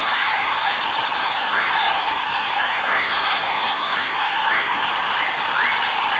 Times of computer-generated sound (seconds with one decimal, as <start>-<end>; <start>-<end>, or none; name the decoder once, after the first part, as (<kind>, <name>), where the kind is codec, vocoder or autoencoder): 0.0-0.7 (codec, SNAC); 1.2-4.9